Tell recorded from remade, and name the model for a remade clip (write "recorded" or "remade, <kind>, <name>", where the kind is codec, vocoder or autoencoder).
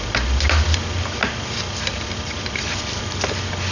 recorded